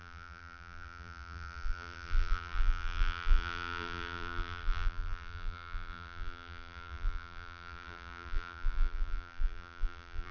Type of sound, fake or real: fake